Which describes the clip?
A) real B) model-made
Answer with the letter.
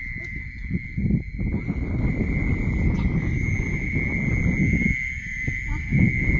A